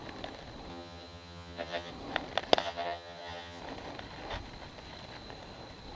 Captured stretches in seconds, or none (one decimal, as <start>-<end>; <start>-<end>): 0.0-0.7; 1.9-2.6; 3.6-5.9